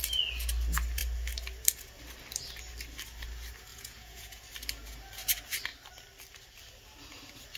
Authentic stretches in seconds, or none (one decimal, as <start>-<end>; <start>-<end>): 0.0-3.7; 4.4-7.6